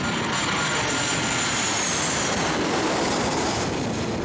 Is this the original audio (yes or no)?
yes